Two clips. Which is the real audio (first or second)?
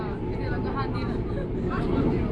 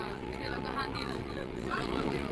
first